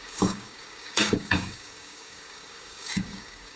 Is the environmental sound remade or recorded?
remade